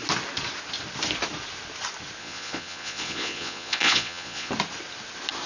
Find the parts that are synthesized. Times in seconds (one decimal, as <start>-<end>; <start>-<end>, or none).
2.2-4.5